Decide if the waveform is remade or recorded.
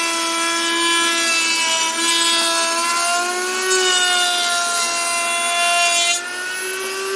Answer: recorded